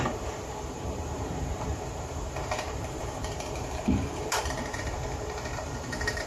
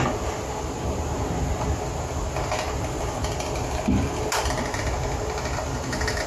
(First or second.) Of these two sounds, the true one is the second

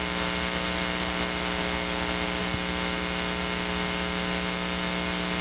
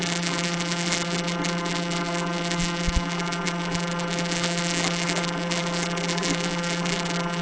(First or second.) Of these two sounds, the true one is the first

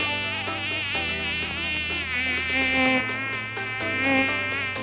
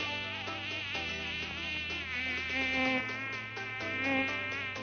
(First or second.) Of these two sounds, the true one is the first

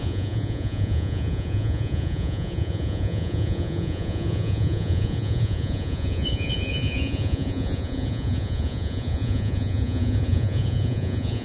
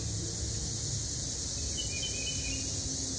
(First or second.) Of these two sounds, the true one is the second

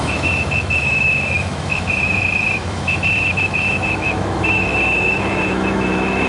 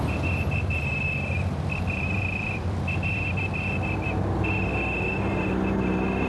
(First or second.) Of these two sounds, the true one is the second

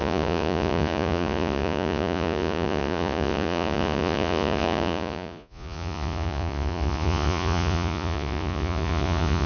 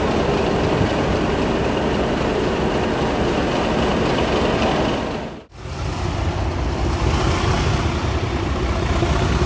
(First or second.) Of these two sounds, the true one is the second